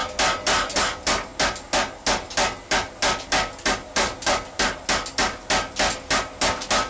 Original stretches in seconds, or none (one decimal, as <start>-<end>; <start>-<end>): 0.0-6.9